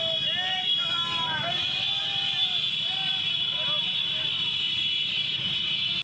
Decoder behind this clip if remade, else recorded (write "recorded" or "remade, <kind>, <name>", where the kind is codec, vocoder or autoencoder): recorded